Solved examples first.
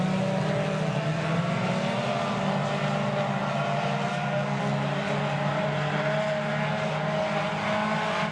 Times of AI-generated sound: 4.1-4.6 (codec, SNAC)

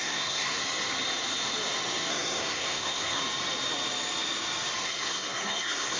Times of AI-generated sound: 0.0-0.6 (codec, SNAC); 2.1-3.2; 4.8-6.0

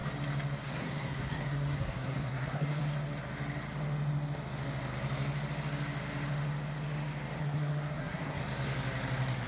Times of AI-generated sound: 0.6-2.8 (codec, SNAC); 7.4-8.4

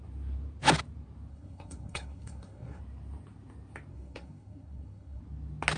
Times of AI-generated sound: 1.3-2.8 (codec, SNAC); 3.9-5.2

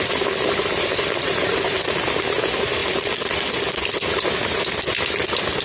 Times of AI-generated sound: none

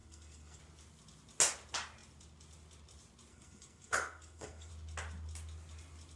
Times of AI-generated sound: 0.0-0.6 (codec, SNAC); 3.3-4.7